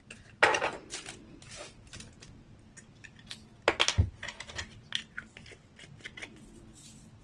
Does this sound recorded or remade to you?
recorded